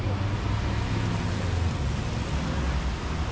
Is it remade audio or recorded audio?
recorded